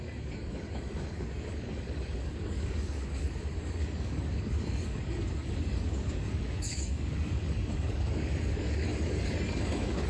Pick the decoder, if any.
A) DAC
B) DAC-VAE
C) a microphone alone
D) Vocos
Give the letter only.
A